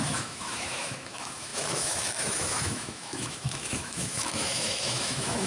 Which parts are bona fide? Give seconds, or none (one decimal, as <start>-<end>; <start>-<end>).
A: none